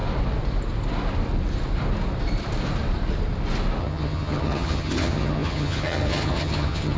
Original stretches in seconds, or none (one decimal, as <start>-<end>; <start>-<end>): 0.0-3.8